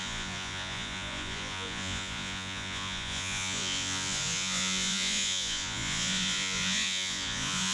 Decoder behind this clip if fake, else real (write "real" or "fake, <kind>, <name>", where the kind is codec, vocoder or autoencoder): fake, vocoder, Vocos